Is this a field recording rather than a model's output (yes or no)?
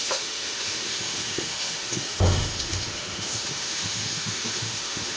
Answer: no